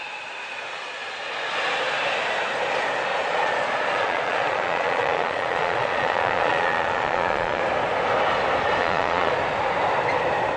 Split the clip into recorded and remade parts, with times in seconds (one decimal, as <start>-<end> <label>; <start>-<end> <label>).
0.0-3.1 recorded; 3.1-7.6 remade; 7.6-8.8 recorded; 8.8-9.3 remade; 9.3-10.6 recorded